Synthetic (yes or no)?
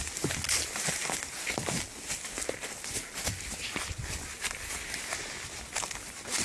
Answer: no